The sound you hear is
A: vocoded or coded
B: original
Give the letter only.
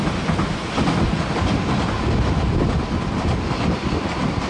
B